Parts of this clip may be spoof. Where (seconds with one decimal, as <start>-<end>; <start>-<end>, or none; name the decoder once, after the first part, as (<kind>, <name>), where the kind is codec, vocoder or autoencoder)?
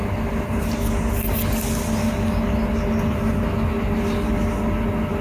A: none